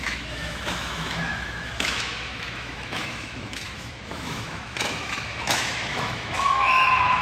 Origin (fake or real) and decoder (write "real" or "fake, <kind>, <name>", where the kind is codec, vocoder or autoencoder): fake, autoencoder, DAC-VAE